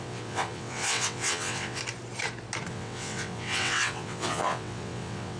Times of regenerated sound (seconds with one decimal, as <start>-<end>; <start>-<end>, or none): 0.0-1.8; 2.7-5.4